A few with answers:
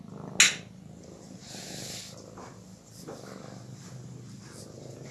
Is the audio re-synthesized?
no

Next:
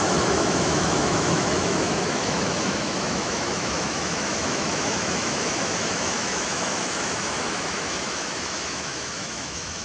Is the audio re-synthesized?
yes